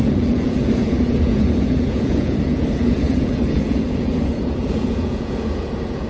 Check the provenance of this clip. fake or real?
fake